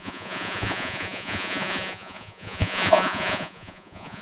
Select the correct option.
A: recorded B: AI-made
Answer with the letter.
B